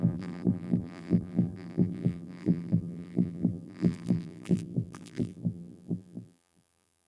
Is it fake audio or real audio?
fake